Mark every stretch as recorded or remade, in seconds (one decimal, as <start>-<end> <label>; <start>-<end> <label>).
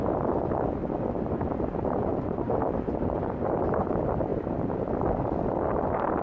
0.0-2.1 recorded; 2.1-3.8 remade; 3.8-4.3 recorded; 4.3-4.9 remade; 4.9-6.2 recorded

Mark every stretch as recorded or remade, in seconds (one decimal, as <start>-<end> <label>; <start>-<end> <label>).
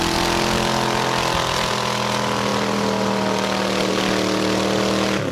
0.0-5.3 recorded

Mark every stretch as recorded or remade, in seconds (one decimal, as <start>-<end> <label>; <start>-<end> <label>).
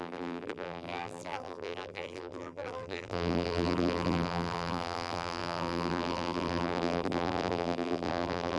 0.0-8.6 remade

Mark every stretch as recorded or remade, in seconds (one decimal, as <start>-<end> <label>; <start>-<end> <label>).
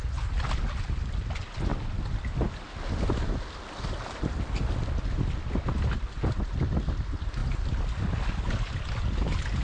0.0-9.6 recorded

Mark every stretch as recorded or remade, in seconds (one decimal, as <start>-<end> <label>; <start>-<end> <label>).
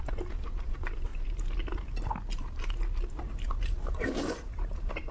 0.0-1.1 remade; 1.1-4.2 recorded; 4.2-5.1 remade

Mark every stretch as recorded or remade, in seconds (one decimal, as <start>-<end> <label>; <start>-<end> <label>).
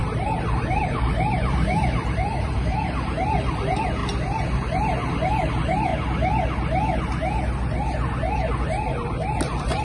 0.0-4.0 remade; 4.0-5.5 recorded; 5.5-5.9 remade; 5.9-8.6 recorded; 8.6-9.8 remade